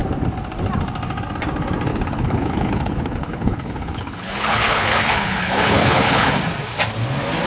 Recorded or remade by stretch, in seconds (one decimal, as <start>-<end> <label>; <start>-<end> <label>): 0.0-1.9 recorded; 1.9-6.3 remade; 6.3-7.5 recorded